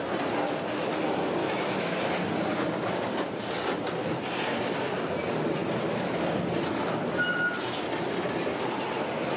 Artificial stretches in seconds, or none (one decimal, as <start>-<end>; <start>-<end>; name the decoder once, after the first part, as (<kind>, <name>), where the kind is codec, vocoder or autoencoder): 1.4-2.0 (autoencoder, DAC-VAE)